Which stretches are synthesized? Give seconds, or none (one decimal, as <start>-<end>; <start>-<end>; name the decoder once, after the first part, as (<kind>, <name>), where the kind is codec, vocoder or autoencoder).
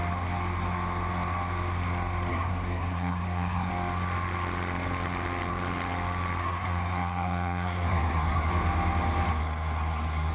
2.3-3.7 (codec, SNAC); 6.4-8.5; 9.4-10.3